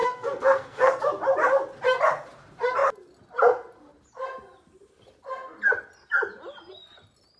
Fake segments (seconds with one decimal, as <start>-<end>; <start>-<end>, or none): 0.0-1.0